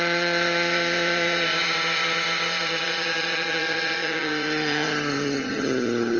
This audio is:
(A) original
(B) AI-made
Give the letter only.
B